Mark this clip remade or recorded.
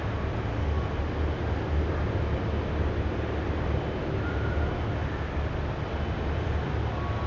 recorded